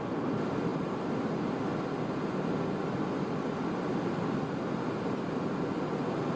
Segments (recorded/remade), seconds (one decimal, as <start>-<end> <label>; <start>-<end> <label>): 0.0-6.4 recorded